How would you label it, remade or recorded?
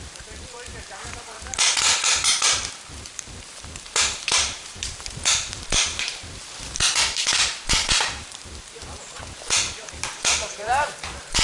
remade